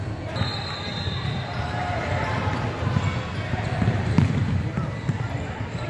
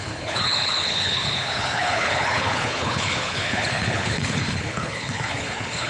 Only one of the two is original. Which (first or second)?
first